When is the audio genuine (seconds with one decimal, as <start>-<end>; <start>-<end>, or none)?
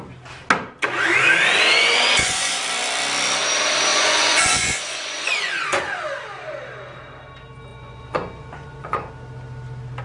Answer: 0.0-1.5; 2.6-3.9; 5.8-7.7; 9.1-10.0